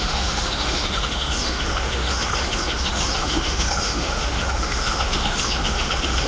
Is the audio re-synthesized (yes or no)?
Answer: yes